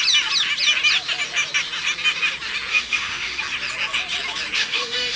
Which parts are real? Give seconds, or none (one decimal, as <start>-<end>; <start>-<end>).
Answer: 0.0-2.7; 3.4-4.6